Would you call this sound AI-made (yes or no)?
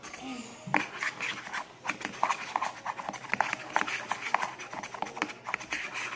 no